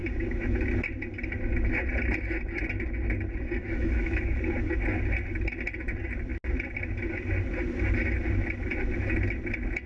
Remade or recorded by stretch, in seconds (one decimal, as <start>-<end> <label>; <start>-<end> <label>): 0.0-3.6 recorded; 3.6-4.4 remade; 4.4-9.9 recorded